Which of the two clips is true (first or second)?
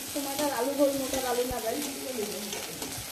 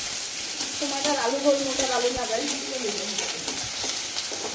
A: first